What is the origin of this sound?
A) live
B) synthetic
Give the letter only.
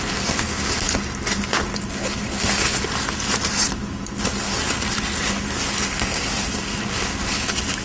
A